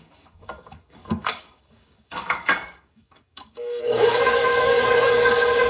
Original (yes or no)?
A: no